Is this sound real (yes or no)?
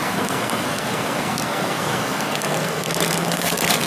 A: no